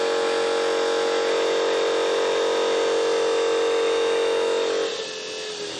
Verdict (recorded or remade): recorded